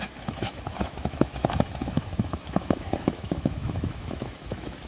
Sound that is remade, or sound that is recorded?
remade